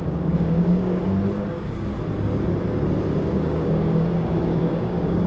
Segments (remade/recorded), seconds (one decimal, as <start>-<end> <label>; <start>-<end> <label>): 0.0-1.0 remade; 1.0-1.5 recorded; 1.5-1.9 remade; 1.9-3.2 recorded; 3.2-5.3 remade